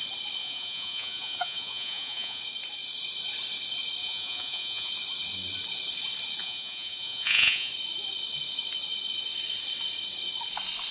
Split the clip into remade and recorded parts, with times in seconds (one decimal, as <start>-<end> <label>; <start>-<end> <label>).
0.0-0.4 recorded; 0.4-2.4 remade; 2.4-4.0 recorded; 4.0-4.9 remade; 4.9-6.4 recorded; 6.4-7.7 remade; 7.7-10.9 recorded